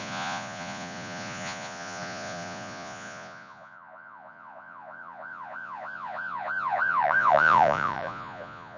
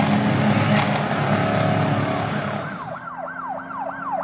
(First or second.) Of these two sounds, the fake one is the first